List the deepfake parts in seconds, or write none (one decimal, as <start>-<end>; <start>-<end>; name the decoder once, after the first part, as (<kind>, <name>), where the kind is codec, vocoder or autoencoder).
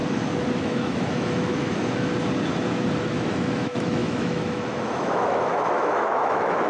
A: 0.6-2.1 (autoencoder, DAC-VAE); 3.0-6.7